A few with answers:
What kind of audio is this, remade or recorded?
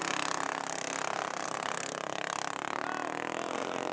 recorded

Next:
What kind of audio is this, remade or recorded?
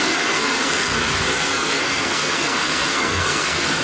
remade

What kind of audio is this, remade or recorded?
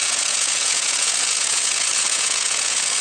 remade